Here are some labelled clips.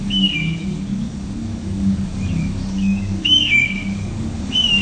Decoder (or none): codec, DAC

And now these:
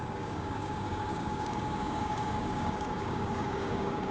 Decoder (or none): codec, DAC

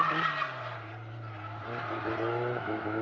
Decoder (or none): none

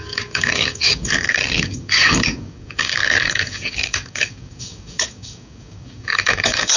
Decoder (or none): codec, DAC